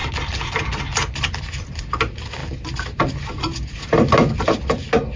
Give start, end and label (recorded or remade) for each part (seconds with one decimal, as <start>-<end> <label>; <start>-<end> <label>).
0.0-5.2 recorded